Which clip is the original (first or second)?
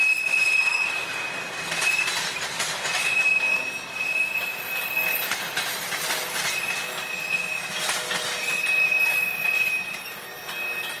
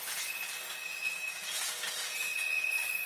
first